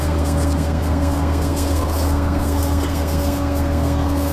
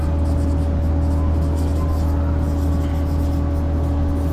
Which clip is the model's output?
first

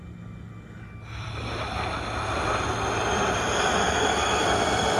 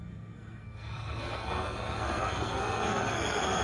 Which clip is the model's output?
second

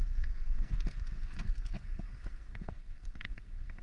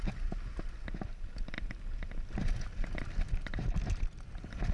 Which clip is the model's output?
first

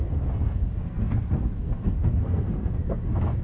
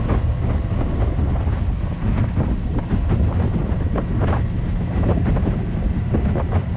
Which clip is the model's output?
first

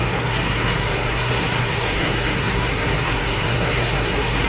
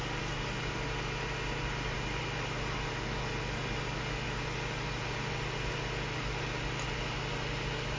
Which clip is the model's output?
first